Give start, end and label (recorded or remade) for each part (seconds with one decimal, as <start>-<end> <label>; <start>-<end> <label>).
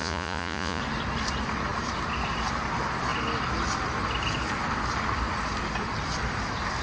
0.0-0.8 remade; 0.8-6.8 recorded